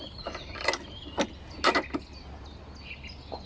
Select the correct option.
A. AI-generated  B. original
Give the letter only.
B